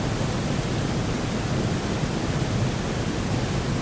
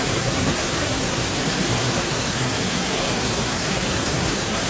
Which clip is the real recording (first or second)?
first